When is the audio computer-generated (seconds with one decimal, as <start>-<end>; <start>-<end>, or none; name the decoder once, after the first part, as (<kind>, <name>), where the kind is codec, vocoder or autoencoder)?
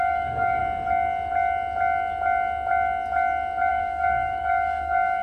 0.0-0.6 (codec, DAC); 3.7-5.2